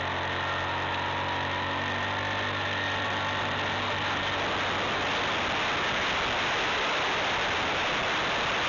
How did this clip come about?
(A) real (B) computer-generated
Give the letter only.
A